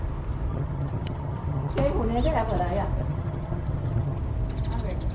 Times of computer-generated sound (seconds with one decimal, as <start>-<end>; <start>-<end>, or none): 0.5-1.7; 3.0-4.2